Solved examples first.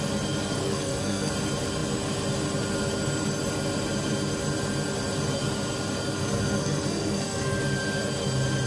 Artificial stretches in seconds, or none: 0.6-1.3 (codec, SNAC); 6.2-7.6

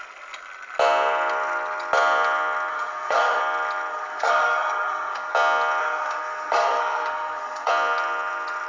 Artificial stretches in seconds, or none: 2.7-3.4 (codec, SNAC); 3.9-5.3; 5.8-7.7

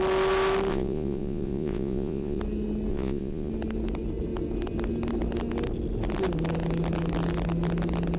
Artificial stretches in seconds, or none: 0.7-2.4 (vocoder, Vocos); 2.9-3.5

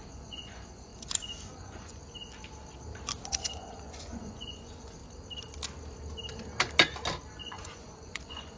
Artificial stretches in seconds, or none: 0.0-2.0 (vocoder, Vocos); 3.3-5.0; 7.3-8.6

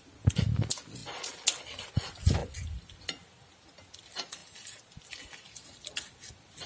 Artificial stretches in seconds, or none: none

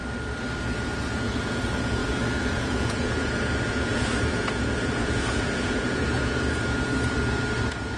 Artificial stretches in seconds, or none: 0.6-8.0 (vocoder, Vocos)

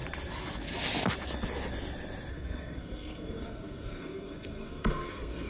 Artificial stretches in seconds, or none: 2.3-5.5 (codec, SNAC)

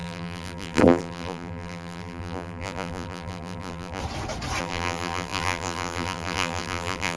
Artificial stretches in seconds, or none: 0.0-4.0 (vocoder, BigVGAN v2); 4.6-7.2